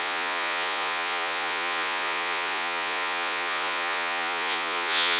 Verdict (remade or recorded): remade